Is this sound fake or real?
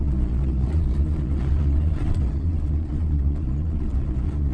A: fake